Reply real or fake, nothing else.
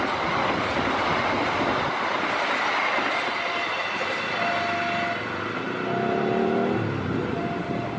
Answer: real